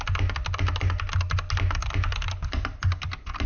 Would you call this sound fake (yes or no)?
no